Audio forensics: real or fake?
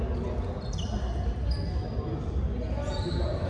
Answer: real